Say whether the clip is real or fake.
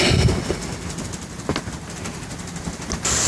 real